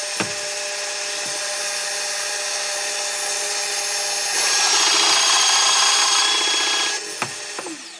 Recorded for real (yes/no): yes